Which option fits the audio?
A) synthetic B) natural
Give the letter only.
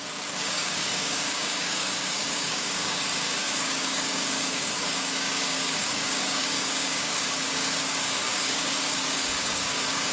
A